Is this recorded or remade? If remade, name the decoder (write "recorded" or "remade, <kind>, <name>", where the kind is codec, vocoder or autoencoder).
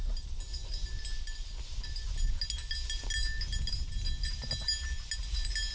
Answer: recorded